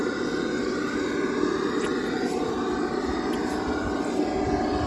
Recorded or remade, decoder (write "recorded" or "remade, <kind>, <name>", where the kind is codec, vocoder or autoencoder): recorded